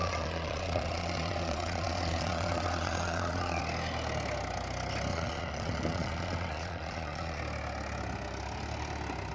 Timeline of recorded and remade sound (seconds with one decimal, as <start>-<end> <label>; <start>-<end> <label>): 0.0-3.6 remade; 3.6-5.1 recorded; 5.1-7.4 remade; 7.4-9.3 recorded